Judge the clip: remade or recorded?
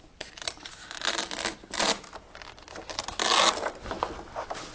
recorded